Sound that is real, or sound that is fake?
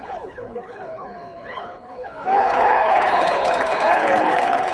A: fake